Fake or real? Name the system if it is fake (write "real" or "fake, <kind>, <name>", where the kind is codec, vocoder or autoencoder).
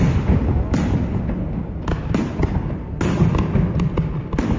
real